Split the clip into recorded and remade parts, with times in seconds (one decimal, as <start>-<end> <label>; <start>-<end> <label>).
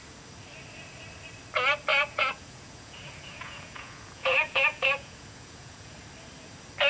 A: 0.0-1.9 recorded; 1.9-6.0 remade; 6.0-6.9 recorded